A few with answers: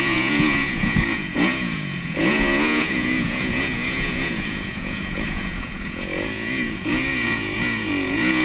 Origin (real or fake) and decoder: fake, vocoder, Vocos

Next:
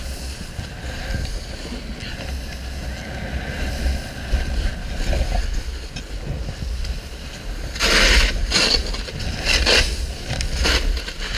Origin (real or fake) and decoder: real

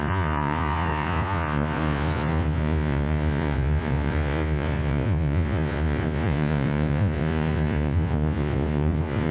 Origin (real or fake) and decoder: fake, vocoder, Vocos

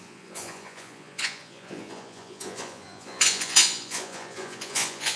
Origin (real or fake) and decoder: fake, vocoder, Vocos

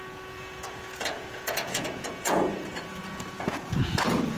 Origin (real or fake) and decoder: fake, vocoder, Vocos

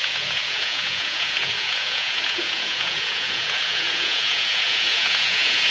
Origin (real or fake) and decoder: fake, vocoder, Vocos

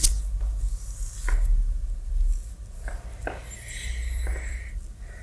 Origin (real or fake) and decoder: real